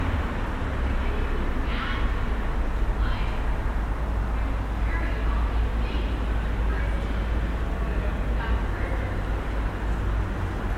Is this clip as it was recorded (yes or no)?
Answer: yes